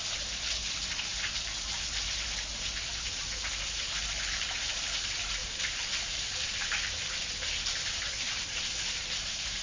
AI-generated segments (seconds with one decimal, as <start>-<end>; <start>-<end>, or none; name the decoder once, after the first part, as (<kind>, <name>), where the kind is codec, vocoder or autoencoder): 1.1-4.6 (vocoder, BigVGAN v2); 5.4-9.6